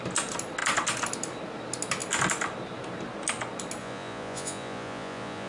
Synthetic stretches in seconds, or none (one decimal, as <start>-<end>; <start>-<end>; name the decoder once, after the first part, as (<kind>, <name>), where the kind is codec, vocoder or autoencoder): 3.8-5.5 (vocoder, Vocos)